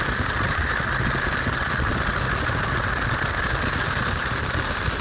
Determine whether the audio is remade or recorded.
recorded